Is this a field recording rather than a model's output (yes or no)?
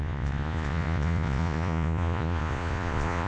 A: no